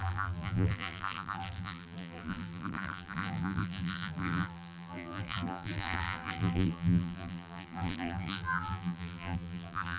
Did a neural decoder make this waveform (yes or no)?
yes